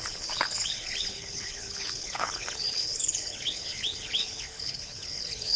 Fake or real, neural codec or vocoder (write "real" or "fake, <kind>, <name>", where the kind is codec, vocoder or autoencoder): fake, codec, HILCodec